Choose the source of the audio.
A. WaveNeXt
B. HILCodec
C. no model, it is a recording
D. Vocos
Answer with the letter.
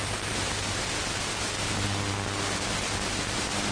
C